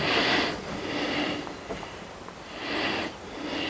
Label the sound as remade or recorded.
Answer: recorded